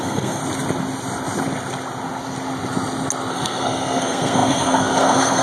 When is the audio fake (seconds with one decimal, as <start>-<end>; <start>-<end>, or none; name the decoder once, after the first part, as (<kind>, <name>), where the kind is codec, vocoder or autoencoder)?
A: 0.0-0.4 (codec, SNAC); 3.3-5.4